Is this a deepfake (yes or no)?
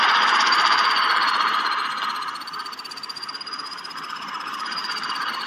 yes